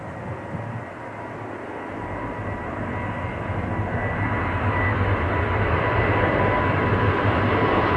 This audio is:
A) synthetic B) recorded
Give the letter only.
B